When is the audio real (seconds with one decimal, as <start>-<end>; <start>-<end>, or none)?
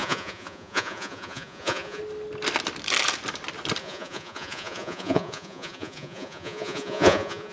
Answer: 2.0-3.8